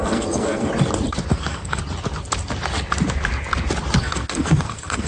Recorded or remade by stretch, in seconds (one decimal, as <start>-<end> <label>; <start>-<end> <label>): 0.0-0.7 remade; 0.7-1.3 recorded; 1.3-1.8 remade; 1.8-4.0 recorded; 4.0-5.1 remade